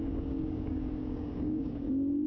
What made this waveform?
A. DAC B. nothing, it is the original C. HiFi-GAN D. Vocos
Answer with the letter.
A